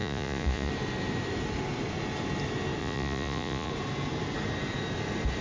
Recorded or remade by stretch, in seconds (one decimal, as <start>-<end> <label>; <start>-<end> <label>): 0.0-0.7 remade; 0.7-2.8 recorded; 2.8-3.7 remade; 3.7-5.4 recorded